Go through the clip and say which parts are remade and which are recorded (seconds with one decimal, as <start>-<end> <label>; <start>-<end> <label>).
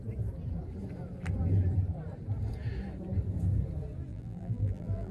0.0-4.1 recorded; 4.1-5.1 remade